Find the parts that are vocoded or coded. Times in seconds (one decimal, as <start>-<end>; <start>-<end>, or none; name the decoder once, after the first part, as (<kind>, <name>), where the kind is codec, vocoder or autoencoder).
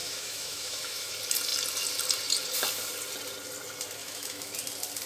0.0-1.1 (autoencoder, DAC-VAE); 4.0-4.5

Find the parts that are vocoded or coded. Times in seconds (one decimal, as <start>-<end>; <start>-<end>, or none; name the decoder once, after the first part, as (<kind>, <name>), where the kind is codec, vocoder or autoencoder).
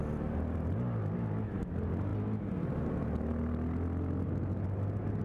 none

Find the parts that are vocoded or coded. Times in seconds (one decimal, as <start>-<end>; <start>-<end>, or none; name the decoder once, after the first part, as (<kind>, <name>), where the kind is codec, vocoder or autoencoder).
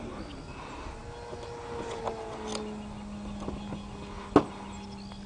none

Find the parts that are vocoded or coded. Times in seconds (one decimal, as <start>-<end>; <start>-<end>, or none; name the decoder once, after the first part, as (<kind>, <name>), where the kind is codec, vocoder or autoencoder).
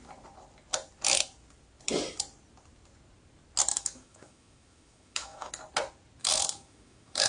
3.7-5.5 (autoencoder, DAC-VAE); 6.2-7.3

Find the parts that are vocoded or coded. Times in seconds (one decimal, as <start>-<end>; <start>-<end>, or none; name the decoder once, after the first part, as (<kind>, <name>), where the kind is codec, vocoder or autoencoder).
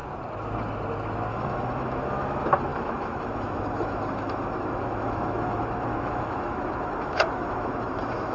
1.3-8.3 (autoencoder, DAC-VAE)